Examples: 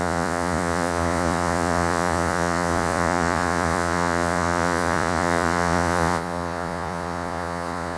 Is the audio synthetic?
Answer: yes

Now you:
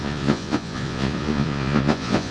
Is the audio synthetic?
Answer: yes